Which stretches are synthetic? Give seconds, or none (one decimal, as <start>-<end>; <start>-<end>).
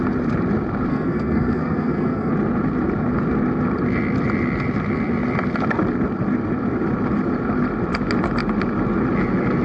0.9-2.3